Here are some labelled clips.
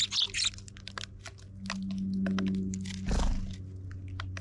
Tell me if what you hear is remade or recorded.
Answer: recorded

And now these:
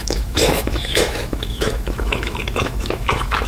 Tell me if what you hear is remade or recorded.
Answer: remade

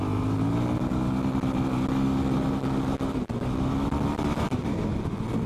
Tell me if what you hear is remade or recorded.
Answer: recorded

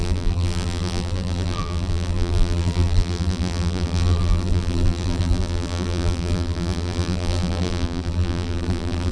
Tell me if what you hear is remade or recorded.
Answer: remade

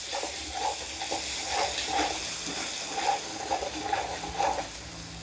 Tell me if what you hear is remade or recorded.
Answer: recorded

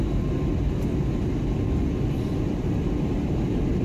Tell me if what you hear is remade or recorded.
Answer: recorded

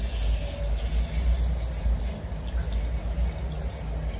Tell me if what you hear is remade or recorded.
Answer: recorded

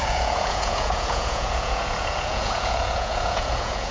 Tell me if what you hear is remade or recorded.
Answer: remade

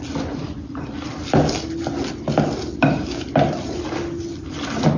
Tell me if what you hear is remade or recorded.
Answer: recorded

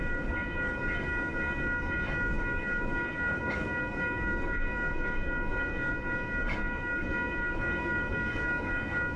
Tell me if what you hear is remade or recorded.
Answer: remade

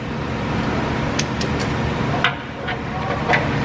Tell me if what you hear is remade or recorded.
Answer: remade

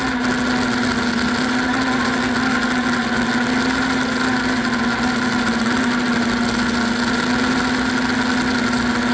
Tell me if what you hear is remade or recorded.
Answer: recorded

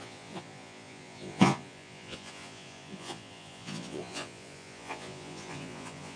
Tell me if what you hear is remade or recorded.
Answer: remade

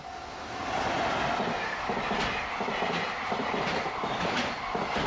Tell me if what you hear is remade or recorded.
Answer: recorded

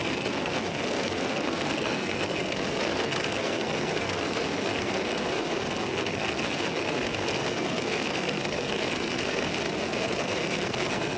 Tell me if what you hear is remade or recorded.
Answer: remade